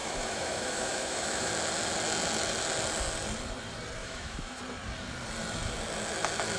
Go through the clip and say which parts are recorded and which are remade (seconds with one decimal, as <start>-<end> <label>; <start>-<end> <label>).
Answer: 0.0-1.5 remade; 1.5-4.0 recorded; 4.0-4.6 remade; 4.6-6.6 recorded